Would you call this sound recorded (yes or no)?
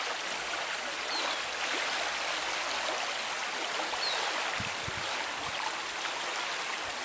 yes